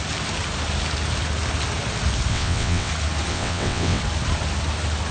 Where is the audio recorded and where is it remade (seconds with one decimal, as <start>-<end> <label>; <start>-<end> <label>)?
0.0-2.3 recorded; 2.3-2.9 remade; 2.9-3.3 recorded; 3.3-4.0 remade; 4.0-5.1 recorded

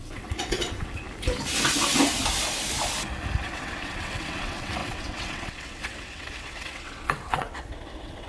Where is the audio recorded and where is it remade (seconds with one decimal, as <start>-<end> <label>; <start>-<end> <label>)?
0.0-1.0 remade; 1.0-3.4 recorded; 3.4-8.3 remade

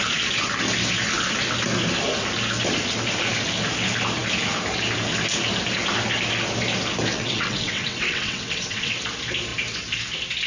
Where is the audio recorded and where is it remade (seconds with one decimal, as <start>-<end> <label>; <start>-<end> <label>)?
0.0-7.1 recorded; 7.1-9.0 remade; 9.0-10.5 recorded